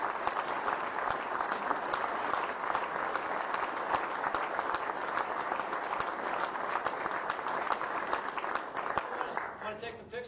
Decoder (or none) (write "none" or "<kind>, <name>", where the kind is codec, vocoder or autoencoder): none